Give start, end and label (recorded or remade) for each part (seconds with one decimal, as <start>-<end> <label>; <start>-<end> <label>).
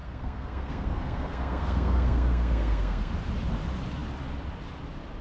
0.0-3.1 remade; 3.1-5.2 recorded